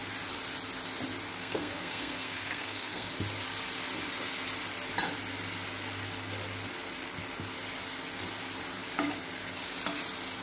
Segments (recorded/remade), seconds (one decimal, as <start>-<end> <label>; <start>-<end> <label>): 0.0-1.3 recorded; 1.3-3.1 remade; 3.1-10.4 recorded